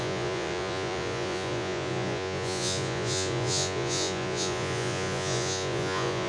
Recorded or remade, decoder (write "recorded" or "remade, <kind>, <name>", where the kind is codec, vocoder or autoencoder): remade, vocoder, Vocos